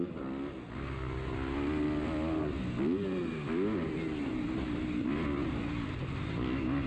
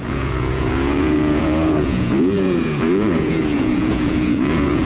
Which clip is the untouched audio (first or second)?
first